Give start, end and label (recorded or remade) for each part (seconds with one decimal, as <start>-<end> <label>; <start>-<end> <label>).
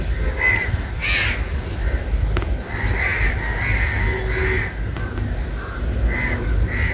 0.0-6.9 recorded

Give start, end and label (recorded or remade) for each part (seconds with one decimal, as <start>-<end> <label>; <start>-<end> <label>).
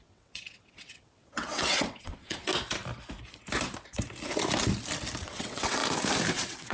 0.0-2.5 remade; 2.5-5.2 recorded; 5.2-5.8 remade; 5.8-6.3 recorded; 6.3-6.7 remade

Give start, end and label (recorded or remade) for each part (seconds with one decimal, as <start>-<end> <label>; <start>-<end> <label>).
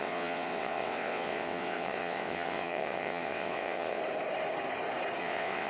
0.0-4.0 remade; 4.0-5.2 recorded; 5.2-5.7 remade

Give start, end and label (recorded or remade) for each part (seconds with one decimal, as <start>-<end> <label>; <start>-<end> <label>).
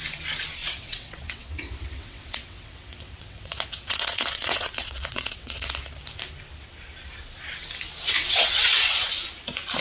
0.0-0.6 recorded; 0.6-5.7 remade; 5.7-8.2 recorded; 8.2-9.1 remade; 9.1-9.8 recorded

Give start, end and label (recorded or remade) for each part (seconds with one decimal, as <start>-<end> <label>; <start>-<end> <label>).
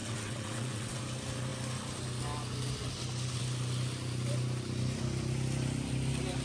0.0-1.0 remade; 1.0-6.4 recorded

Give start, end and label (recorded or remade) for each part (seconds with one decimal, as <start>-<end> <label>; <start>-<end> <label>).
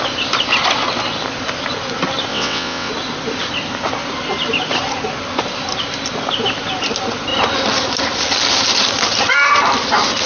0.0-2.3 recorded; 2.3-2.9 remade; 2.9-10.3 recorded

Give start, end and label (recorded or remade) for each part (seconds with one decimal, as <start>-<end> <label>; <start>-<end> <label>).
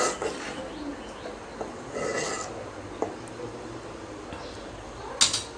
0.0-5.6 recorded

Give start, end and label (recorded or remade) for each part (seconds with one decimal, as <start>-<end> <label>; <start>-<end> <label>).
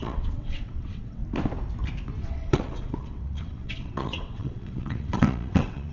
0.0-1.2 remade; 1.2-2.2 recorded; 2.2-5.9 remade